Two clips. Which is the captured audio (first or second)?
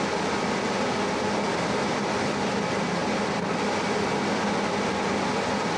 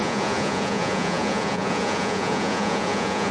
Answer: first